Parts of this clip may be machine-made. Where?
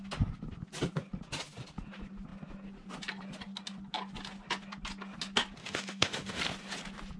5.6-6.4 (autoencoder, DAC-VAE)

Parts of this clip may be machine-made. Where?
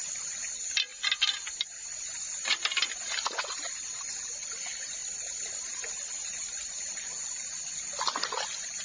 none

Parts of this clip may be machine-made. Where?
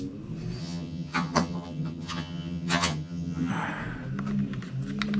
0.6-3.5 (vocoder, HiFi-GAN)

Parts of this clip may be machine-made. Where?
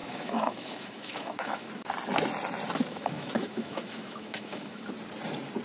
0.0-1.7 (autoencoder, DAC-VAE); 2.9-4.8